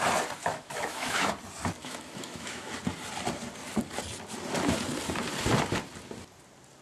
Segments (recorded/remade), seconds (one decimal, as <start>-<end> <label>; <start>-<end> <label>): 0.0-0.4 recorded; 0.4-1.3 remade; 1.3-1.8 recorded; 1.8-2.7 remade; 2.7-6.8 recorded